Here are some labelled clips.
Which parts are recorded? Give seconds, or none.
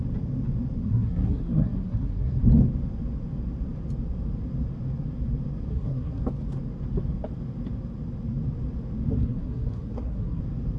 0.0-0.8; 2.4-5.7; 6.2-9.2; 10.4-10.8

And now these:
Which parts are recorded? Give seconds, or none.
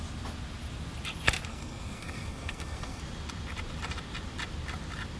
0.0-1.5; 3.0-5.2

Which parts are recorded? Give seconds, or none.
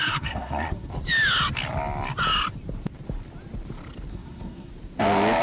0.9-4.1; 4.7-5.4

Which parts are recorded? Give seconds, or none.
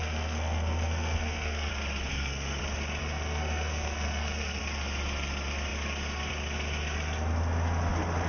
1.7-2.1; 2.6-3.0; 4.6-8.3